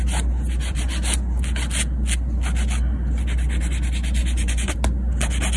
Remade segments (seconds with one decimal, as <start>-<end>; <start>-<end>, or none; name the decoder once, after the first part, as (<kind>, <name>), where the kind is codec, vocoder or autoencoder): 4.2-4.7 (vocoder, Vocos)